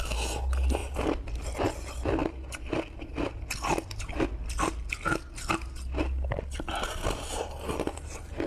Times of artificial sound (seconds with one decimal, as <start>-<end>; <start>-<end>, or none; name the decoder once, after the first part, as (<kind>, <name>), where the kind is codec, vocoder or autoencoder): none